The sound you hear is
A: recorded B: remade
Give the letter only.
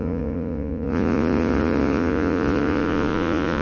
B